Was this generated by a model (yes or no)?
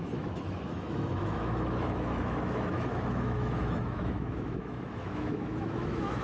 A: yes